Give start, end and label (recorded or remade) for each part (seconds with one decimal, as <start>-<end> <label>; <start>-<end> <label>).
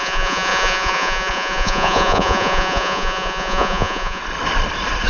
0.0-4.2 remade; 4.2-5.1 recorded